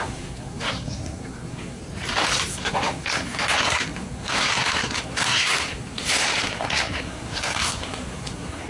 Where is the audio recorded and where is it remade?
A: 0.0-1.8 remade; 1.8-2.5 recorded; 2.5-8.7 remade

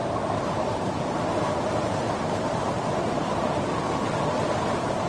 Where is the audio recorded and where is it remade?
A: 0.0-5.1 remade

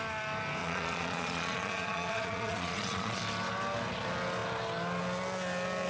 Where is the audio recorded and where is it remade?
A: 0.0-0.6 recorded; 0.6-3.2 remade; 3.2-5.9 recorded